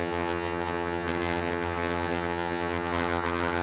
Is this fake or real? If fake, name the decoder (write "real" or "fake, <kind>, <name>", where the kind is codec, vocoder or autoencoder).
fake, vocoder, HiFi-GAN